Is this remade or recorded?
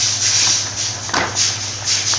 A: recorded